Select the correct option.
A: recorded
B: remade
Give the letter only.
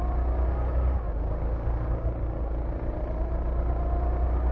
A